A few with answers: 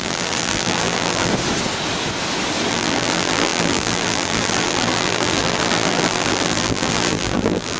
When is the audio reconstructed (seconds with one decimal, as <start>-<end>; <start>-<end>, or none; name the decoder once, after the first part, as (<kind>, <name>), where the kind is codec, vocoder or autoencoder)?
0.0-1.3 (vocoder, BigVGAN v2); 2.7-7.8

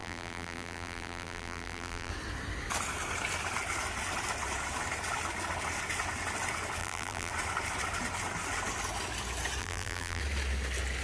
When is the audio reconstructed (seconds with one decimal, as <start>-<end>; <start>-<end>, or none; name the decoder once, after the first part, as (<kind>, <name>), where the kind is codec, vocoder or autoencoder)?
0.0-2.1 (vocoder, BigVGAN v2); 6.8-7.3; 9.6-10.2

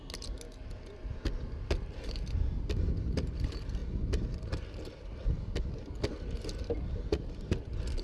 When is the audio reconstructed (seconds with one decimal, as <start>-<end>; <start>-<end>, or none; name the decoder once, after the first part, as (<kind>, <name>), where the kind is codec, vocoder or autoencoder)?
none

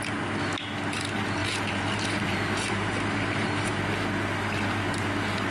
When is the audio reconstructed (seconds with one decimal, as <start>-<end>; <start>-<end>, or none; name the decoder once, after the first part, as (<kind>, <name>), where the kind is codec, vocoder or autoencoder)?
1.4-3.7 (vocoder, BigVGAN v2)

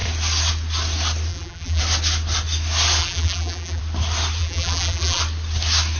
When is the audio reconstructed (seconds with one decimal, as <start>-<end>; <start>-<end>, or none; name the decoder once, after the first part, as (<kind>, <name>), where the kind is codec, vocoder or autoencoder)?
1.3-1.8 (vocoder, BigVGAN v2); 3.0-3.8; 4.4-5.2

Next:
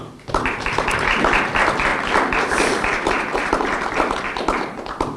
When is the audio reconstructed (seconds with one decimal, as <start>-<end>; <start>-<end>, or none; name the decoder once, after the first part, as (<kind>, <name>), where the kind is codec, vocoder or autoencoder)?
1.9-5.2 (vocoder, BigVGAN v2)